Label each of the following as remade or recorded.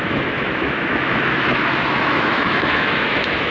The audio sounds remade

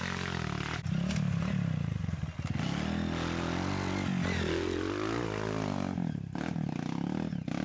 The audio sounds recorded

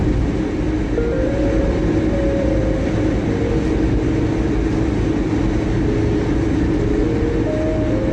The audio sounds recorded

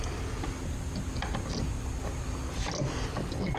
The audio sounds recorded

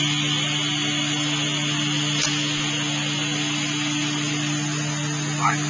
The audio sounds recorded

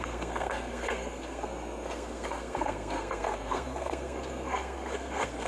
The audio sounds remade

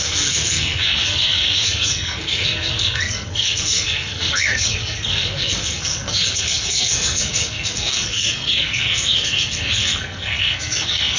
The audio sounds remade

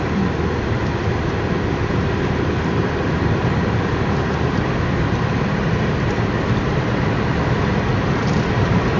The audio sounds remade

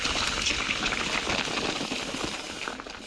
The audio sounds recorded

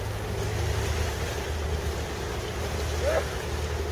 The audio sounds recorded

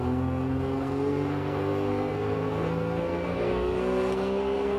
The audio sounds remade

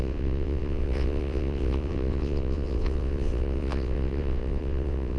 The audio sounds remade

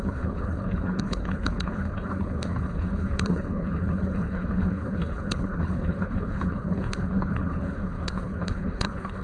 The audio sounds remade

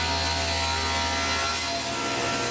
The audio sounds recorded